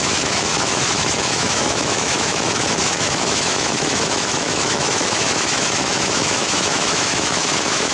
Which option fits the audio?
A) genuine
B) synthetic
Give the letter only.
B